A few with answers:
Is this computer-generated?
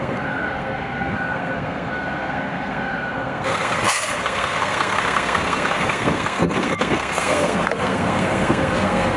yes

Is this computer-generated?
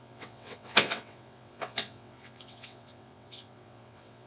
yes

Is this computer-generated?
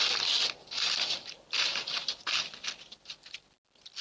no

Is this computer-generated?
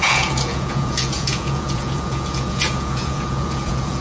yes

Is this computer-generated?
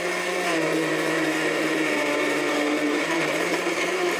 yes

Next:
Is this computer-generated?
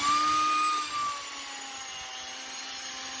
no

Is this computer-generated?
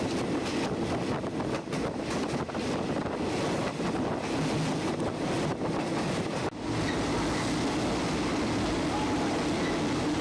no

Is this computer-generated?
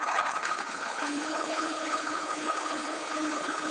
yes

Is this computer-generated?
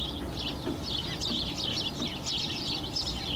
no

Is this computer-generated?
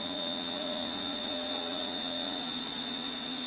yes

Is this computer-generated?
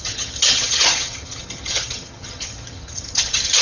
yes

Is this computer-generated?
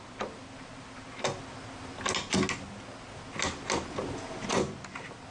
no